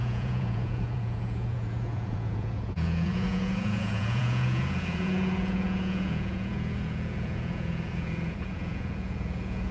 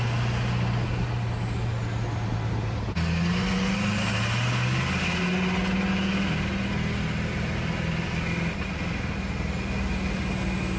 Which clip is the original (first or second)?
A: second